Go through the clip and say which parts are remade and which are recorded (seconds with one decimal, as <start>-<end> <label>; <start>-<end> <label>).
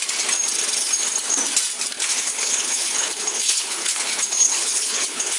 0.0-2.0 recorded; 2.0-5.4 remade